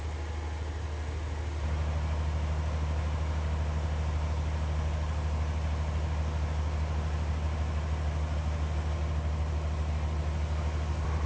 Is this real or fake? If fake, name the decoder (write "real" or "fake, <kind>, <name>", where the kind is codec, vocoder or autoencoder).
real